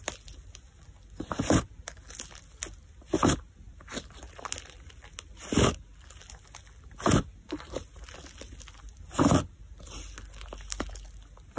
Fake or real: real